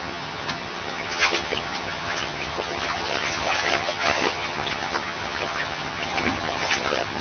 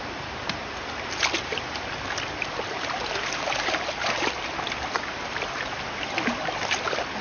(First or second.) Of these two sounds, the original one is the second